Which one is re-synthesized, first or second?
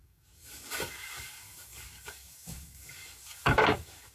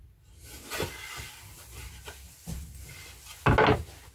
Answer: first